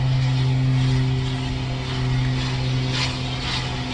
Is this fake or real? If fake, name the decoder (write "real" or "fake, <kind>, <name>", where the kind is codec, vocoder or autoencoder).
real